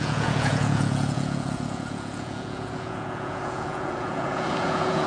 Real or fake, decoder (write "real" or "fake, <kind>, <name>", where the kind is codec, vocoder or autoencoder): fake, vocoder, Vocos